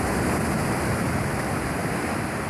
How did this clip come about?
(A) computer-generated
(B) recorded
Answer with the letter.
B